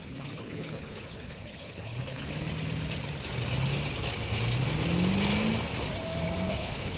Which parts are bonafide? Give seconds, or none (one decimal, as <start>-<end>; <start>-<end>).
2.3-6.5